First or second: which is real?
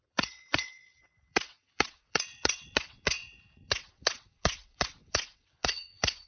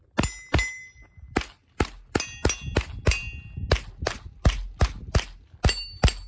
second